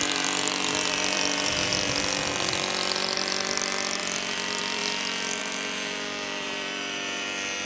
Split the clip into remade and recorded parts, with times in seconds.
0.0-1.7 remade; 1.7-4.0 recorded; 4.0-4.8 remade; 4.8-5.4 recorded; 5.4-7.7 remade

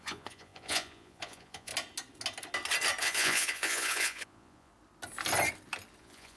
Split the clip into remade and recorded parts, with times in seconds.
0.0-1.7 remade; 1.7-3.0 recorded; 3.0-4.7 remade; 4.7-6.0 recorded; 6.0-6.4 remade

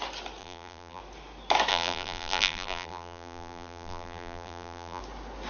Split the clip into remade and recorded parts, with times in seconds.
0.0-0.4 recorded; 0.4-1.0 remade; 1.0-1.7 recorded; 1.7-5.0 remade; 5.0-5.5 recorded

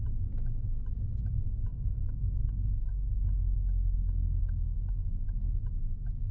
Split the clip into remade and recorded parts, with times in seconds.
0.0-1.7 recorded; 1.7-5.5 remade; 5.5-6.3 recorded

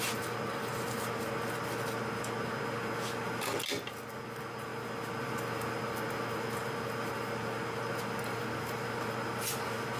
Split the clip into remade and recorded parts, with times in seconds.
0.0-10.0 recorded